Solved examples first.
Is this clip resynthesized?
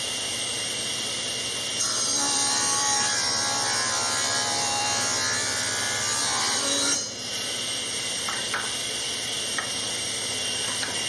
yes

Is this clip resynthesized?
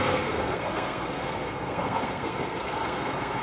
yes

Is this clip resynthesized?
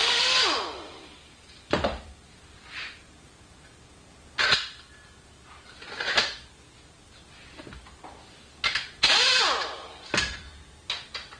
no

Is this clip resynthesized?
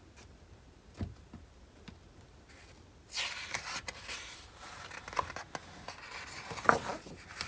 no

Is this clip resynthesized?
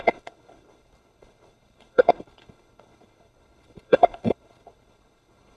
yes